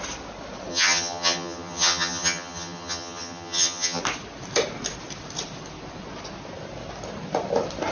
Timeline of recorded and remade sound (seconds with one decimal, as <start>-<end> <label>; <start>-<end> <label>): 0.0-0.7 recorded; 0.7-4.0 remade; 4.0-7.9 recorded